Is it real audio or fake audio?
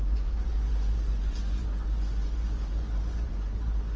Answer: fake